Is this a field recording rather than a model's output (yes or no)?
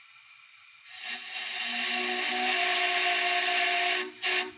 yes